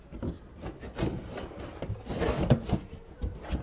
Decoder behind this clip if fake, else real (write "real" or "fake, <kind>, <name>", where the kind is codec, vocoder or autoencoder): real